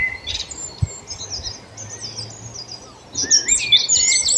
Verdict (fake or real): real